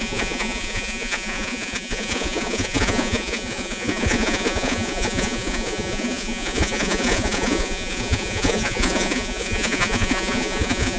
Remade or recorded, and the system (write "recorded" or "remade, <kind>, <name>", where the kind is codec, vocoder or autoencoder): remade, vocoder, Vocos